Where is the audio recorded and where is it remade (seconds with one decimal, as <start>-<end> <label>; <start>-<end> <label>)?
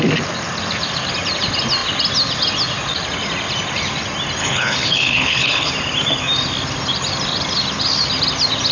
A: 0.0-4.4 recorded; 4.4-5.7 remade; 5.7-8.7 recorded